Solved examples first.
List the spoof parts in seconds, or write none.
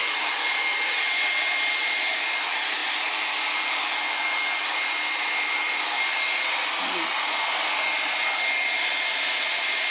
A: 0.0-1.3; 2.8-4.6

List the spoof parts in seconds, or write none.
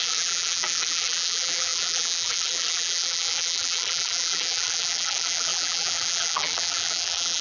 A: 0.0-7.4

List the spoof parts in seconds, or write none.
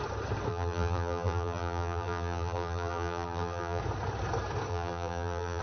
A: 0.5-3.8; 4.7-5.6